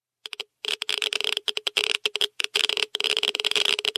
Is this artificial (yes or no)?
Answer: yes